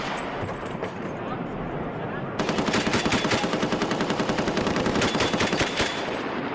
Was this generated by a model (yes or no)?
yes